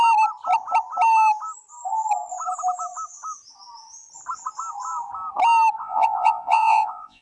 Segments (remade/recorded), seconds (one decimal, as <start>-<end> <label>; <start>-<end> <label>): 0.0-5.8 recorded; 5.8-7.2 remade